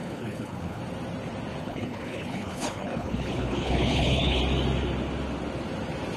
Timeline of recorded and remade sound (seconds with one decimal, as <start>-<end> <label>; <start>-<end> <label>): 0.0-0.8 remade; 0.8-1.6 recorded; 1.6-4.4 remade; 4.4-6.2 recorded